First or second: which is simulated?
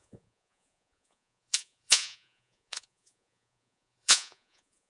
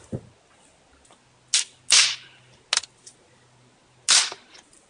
first